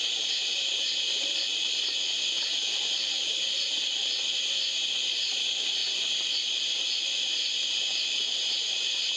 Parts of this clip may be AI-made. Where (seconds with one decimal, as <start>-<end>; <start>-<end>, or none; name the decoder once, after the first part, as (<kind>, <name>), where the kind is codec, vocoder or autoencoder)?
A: 0.0-2.4 (vocoder, BigVGAN v2); 5.0-5.8; 7.7-9.2